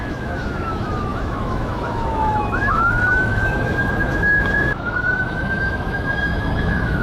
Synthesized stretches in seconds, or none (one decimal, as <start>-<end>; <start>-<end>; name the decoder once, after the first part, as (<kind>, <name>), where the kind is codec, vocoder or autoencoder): 0.0-7.0 (autoencoder, DAC-VAE)